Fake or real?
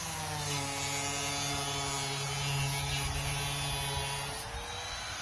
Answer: real